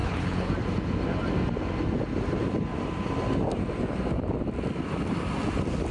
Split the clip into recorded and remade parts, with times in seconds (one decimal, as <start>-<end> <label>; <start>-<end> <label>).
0.0-0.5 remade; 0.5-5.9 recorded